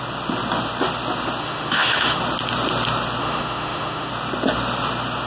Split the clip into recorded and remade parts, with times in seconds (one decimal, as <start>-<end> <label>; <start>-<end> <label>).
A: 0.0-1.4 recorded; 1.4-2.2 remade; 2.2-3.2 recorded; 3.2-4.1 remade; 4.1-5.3 recorded